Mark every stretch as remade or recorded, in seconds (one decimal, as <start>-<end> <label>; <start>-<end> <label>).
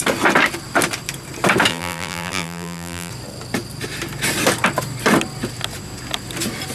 0.0-1.7 recorded; 1.7-3.1 remade; 3.1-6.7 recorded